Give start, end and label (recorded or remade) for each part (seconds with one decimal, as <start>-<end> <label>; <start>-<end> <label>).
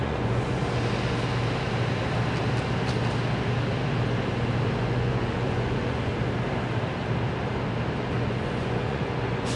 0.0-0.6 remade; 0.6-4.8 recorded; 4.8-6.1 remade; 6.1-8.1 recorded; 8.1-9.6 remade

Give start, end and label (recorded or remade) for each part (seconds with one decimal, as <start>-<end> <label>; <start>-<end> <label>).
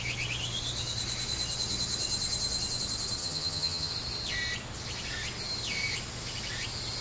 0.0-3.2 recorded; 3.2-3.9 remade; 3.9-7.0 recorded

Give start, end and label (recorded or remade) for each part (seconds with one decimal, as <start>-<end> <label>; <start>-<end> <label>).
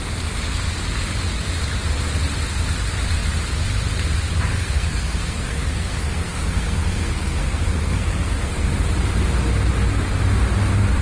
0.0-4.5 recorded; 4.5-8.7 remade; 8.7-11.0 recorded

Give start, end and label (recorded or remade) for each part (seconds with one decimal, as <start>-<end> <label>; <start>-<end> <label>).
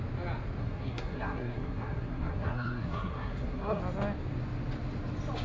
0.0-0.6 recorded; 0.6-3.8 remade; 3.8-5.4 recorded